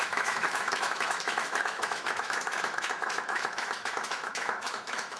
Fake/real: fake